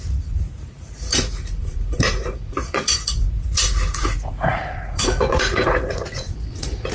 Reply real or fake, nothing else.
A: fake